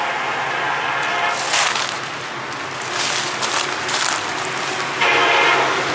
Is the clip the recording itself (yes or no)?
yes